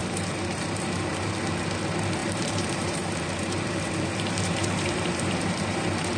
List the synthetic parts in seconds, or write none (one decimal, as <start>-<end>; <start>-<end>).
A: 0.0-1.3; 2.2-6.2